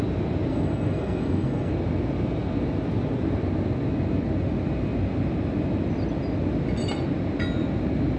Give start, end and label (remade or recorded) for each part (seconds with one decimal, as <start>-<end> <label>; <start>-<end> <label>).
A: 0.0-0.5 recorded; 0.5-1.7 remade; 1.7-8.2 recorded